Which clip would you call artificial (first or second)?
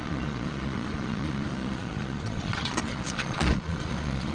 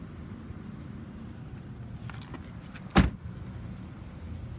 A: first